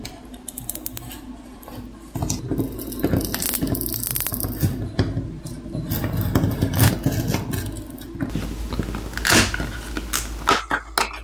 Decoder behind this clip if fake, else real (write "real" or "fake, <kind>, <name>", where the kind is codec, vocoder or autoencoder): real